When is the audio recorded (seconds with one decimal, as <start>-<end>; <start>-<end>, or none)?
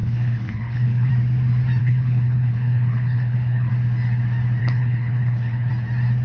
1.1-1.8; 3.7-4.6; 5.7-6.2